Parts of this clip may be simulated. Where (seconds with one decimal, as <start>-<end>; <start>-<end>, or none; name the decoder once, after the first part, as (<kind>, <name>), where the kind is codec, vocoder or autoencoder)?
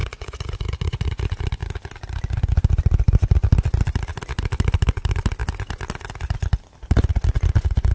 0.0-1.1 (vocoder, Vocos)